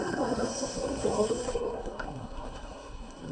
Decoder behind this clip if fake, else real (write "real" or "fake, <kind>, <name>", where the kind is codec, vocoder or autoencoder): fake, codec, SNAC